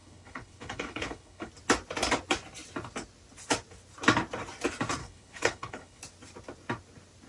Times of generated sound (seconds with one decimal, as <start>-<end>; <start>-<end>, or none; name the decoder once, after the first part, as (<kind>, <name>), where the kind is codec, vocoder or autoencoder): 0.0-1.5 (codec, HILCodec); 5.0-6.0